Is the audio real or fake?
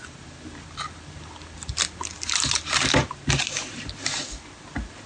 real